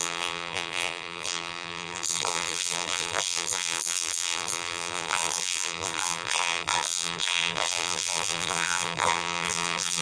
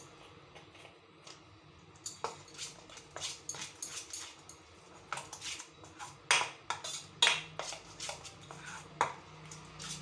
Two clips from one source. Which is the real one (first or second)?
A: second